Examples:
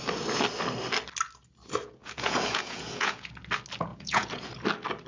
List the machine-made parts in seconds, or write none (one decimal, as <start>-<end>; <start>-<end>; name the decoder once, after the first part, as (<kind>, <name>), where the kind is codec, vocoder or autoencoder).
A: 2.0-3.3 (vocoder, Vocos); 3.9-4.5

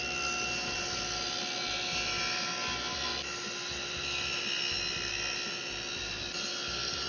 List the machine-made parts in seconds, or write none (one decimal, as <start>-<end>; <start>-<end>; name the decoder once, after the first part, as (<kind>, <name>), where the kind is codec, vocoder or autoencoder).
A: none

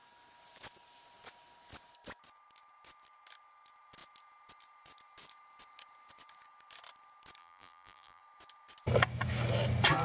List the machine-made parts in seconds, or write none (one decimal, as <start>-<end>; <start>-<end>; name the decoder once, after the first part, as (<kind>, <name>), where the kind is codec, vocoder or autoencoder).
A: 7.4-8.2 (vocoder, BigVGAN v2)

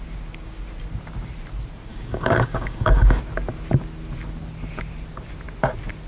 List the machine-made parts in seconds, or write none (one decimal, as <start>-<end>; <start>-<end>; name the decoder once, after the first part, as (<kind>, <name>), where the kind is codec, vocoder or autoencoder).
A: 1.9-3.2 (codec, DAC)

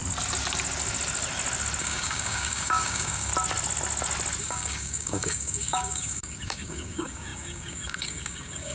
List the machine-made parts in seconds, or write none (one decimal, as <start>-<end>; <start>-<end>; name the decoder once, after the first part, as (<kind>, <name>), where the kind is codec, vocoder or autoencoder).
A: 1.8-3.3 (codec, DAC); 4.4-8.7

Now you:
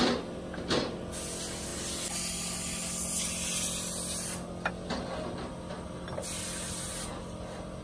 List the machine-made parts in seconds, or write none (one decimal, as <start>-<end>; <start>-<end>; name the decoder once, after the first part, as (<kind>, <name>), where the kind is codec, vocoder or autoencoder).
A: none

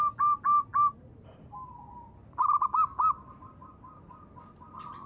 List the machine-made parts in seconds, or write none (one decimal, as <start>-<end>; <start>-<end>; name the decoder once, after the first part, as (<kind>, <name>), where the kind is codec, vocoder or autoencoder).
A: none